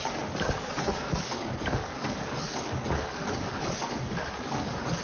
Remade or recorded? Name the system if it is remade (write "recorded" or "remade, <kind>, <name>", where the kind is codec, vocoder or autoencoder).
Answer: remade, codec, DAC